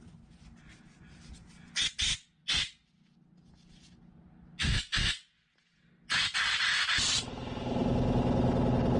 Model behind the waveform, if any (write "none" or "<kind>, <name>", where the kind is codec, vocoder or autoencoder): none